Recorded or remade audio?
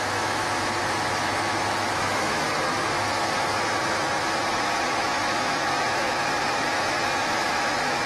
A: remade